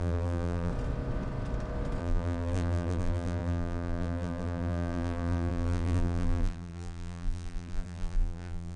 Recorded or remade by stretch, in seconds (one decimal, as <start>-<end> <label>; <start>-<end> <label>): 0.0-0.7 remade; 0.7-2.0 recorded; 2.0-8.8 remade